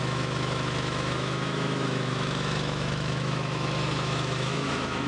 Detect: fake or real fake